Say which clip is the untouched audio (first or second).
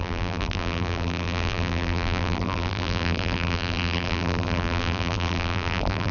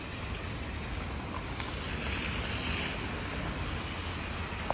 second